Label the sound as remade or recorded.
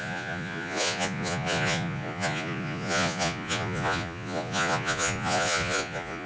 remade